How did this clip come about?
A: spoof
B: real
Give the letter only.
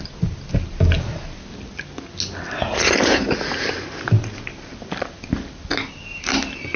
B